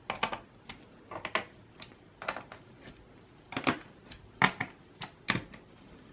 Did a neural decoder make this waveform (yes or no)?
no